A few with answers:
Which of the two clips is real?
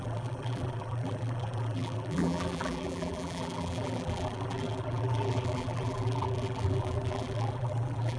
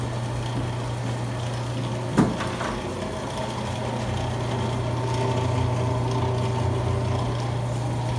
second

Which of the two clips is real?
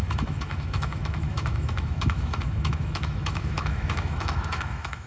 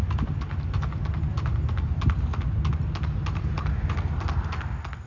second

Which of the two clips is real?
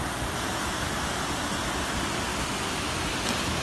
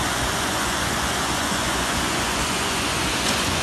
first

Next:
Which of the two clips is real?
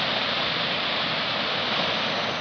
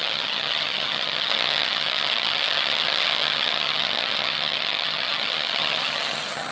first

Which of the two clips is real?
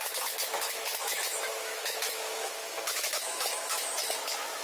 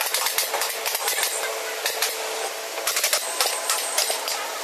second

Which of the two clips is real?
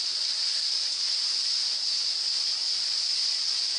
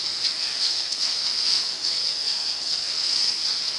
first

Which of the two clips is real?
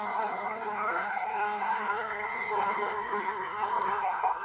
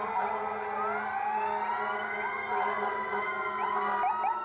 second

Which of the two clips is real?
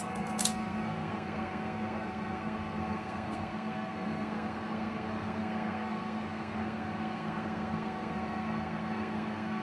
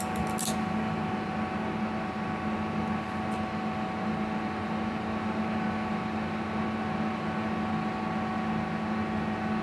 second